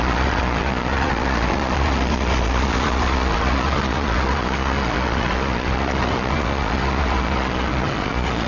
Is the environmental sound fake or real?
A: fake